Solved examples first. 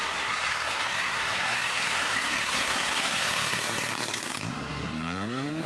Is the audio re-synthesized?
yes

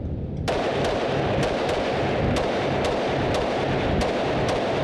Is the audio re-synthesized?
yes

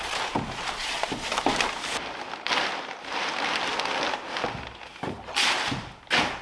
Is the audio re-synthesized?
no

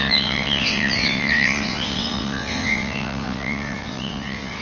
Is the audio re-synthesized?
yes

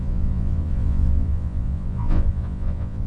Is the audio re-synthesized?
yes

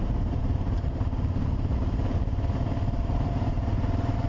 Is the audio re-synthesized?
yes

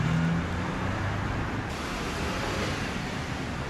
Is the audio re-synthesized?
no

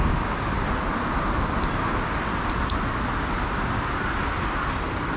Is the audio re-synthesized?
no